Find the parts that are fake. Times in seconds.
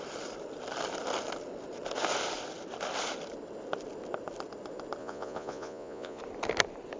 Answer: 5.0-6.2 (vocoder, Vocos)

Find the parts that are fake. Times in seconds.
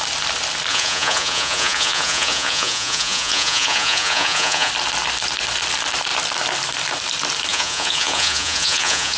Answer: 0.7-4.7 (vocoder, Vocos); 7.5-9.2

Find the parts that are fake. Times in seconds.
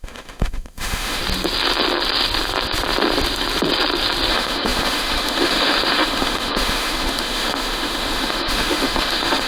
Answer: 0.0-1.2 (autoencoder, DAC-VAE); 4.3-9.5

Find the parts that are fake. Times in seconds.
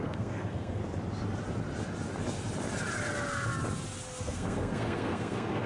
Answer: 0.0-0.8 (codec, SNAC); 4.2-5.7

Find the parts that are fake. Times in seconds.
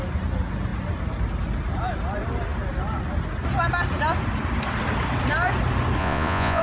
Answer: 6.0-6.6 (vocoder, Vocos)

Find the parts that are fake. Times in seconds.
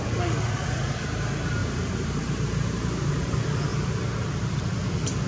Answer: 1.6-3.1 (vocoder, BigVGAN v2)